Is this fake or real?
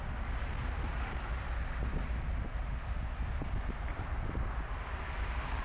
real